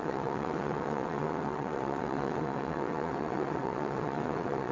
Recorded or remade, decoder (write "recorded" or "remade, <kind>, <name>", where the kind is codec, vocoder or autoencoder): remade, vocoder, WaveNeXt